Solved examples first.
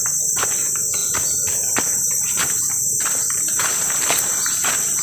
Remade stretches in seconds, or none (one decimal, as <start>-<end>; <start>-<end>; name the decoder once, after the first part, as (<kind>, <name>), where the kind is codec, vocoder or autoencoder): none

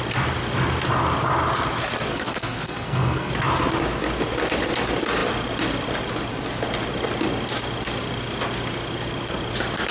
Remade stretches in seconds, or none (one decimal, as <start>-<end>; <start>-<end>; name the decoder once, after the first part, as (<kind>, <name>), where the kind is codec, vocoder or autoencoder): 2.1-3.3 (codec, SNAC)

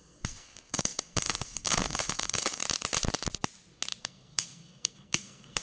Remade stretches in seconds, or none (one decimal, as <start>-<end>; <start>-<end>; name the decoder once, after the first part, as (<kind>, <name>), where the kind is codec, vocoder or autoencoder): 0.0-2.6 (codec, SNAC); 4.0-5.6

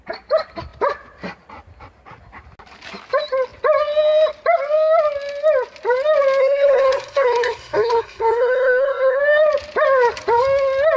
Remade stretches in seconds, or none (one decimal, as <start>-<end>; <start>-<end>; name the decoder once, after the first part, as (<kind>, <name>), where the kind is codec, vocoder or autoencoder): 6.4-9.2 (codec, SNAC)

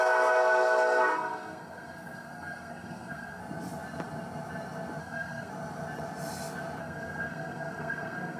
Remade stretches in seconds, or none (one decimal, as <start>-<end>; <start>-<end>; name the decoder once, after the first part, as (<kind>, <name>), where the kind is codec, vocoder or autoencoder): 0.0-3.4 (codec, SNAC); 5.0-5.5; 6.8-8.4

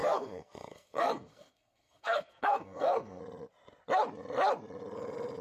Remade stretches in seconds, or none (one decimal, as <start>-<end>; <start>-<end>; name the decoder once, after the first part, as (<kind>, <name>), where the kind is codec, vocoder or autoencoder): 0.0-3.2 (codec, SNAC)

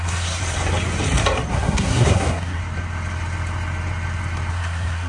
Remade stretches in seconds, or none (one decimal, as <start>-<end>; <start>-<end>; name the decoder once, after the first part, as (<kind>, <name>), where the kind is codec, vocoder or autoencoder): 0.0-0.4 (codec, SNAC); 1.5-2.6; 4.5-5.1

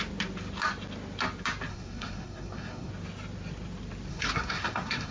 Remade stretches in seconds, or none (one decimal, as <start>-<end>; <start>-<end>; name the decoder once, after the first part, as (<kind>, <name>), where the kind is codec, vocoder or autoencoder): 1.7-2.9 (codec, SNAC); 4.1-5.1